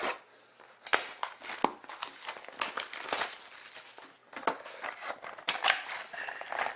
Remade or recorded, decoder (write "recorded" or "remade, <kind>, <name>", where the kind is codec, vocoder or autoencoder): recorded